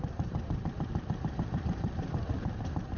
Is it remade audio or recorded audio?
remade